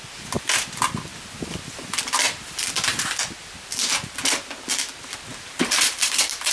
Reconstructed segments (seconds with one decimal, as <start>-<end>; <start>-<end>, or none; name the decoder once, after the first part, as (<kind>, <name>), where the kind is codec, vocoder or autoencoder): 5.3-6.5 (vocoder, BigVGAN v2)